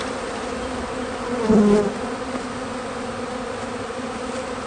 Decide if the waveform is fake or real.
real